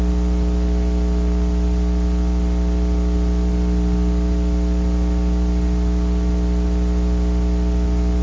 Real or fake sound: real